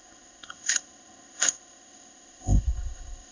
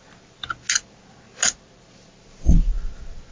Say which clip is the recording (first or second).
second